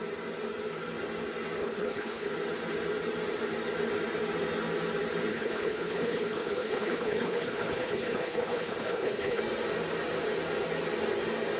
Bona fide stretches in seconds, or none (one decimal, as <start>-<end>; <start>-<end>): 0.0-1.6; 2.3-5.3; 9.4-11.6